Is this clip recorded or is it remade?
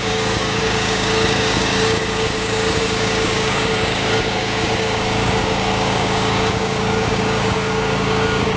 remade